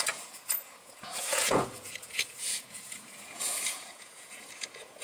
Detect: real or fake fake